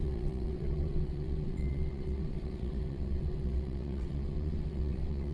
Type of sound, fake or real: fake